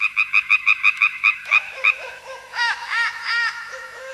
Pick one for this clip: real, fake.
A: fake